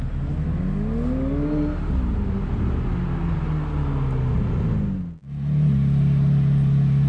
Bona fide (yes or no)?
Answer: yes